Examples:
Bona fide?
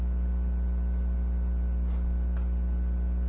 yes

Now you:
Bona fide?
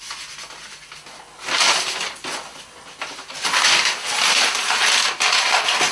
yes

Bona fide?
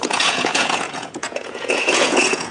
no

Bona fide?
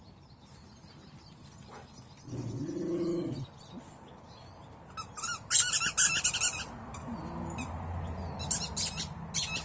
yes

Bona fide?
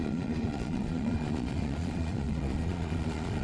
no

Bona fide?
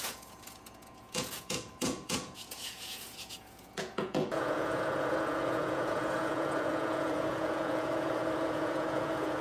no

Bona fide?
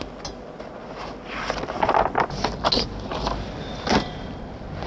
yes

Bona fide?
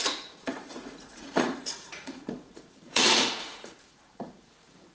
no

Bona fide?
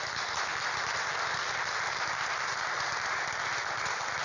yes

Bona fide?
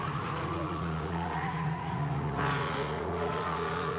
no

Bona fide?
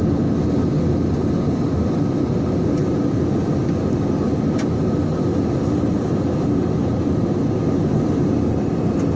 yes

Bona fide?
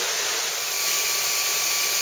yes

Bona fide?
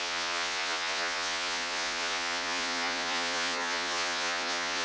no